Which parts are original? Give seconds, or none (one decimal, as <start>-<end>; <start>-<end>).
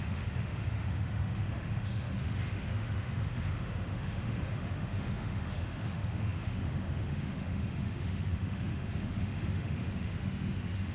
none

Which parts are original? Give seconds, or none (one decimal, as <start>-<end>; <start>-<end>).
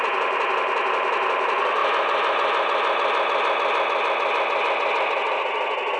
0.0-6.0